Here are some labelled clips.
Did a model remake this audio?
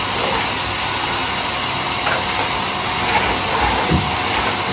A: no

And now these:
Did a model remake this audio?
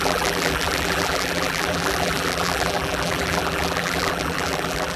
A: yes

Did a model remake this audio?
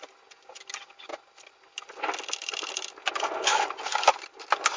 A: no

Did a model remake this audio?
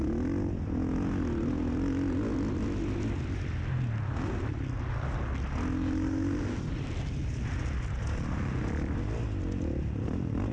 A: no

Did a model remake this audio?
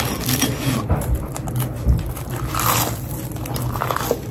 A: no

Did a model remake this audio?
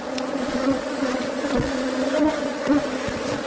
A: yes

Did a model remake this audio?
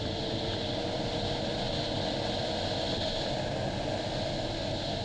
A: no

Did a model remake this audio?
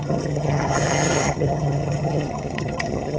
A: yes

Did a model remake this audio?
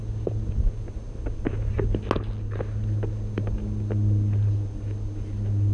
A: no